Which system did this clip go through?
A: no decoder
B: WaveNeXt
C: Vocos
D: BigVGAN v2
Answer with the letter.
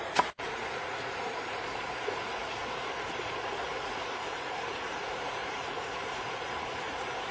C